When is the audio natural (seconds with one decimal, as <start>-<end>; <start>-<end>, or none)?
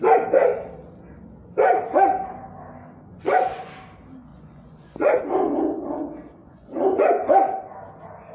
0.0-3.1; 3.7-4.3; 5.2-6.4; 7.0-8.3